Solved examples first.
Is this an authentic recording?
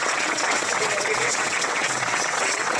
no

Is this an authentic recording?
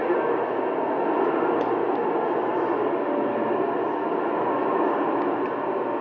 yes